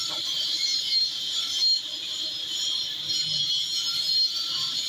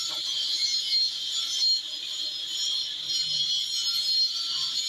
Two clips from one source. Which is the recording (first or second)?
second